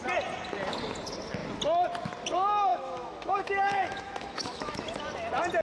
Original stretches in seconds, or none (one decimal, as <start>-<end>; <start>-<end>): 0.0-2.7; 5.0-5.6